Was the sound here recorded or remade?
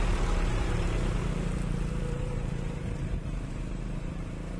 remade